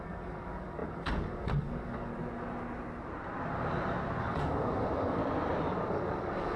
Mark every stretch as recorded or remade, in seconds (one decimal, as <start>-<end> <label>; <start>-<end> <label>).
0.0-2.1 remade; 2.1-4.2 recorded; 4.2-5.2 remade; 5.2-5.9 recorded; 5.9-6.6 remade